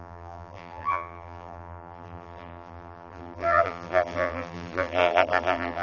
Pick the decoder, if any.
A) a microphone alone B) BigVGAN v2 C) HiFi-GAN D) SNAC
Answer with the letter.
B